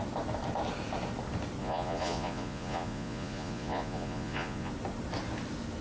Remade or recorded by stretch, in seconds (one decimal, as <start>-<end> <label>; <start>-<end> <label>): 0.0-1.6 recorded; 1.6-4.7 remade; 4.7-5.8 recorded